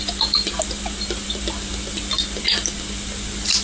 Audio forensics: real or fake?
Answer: real